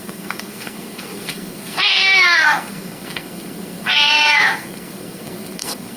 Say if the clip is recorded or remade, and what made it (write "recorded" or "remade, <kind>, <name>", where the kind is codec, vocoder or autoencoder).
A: remade, codec, SNAC